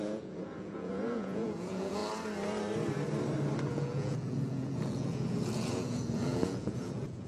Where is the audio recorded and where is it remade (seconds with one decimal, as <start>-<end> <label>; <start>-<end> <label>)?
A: 0.0-2.0 remade; 2.0-3.7 recorded; 3.7-7.3 remade